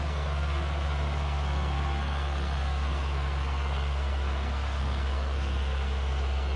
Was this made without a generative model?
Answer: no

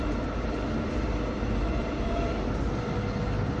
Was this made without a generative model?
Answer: no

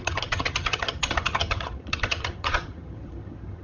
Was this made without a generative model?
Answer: no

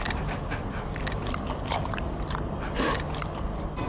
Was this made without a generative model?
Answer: yes